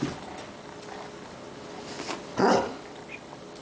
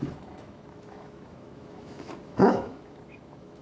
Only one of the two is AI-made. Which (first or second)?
second